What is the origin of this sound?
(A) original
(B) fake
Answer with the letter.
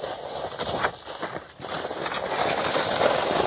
A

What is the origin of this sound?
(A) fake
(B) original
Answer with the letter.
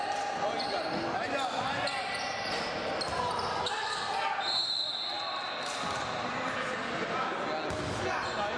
B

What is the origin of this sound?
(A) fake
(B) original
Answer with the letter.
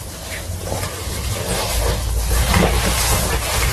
B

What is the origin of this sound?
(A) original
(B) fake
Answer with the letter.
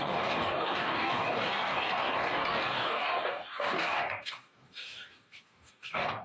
B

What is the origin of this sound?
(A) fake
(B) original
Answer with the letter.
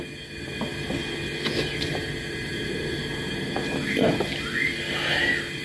B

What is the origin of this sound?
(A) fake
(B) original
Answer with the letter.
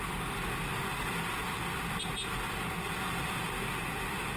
B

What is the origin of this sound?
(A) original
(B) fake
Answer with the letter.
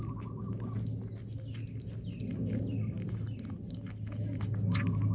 A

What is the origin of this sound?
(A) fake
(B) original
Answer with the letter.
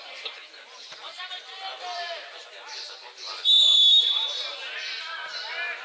A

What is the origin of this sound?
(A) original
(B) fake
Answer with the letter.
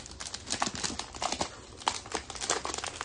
A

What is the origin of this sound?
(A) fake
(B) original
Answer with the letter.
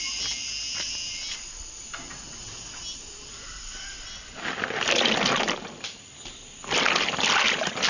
B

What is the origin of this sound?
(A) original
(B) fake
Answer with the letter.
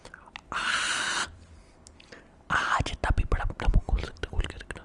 A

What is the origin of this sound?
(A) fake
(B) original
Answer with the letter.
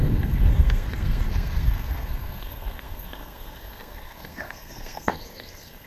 A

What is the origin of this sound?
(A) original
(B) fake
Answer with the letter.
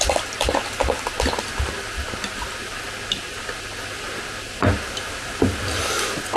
A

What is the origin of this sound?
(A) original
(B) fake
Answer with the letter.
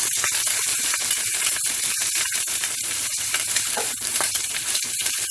B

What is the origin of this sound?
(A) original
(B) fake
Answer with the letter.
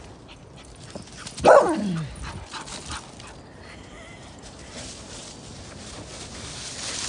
A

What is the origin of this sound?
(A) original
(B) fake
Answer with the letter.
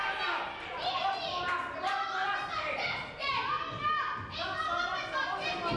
A